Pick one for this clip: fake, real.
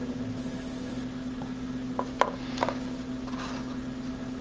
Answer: real